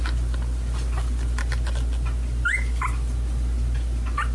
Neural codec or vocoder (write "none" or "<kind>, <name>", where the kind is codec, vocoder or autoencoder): none